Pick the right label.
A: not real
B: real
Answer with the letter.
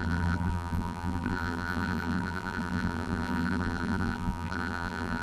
A